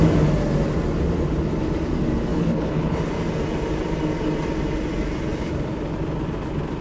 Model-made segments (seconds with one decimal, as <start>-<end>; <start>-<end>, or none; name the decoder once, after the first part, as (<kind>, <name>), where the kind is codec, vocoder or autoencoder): 2.3-3.0 (codec, HILCodec)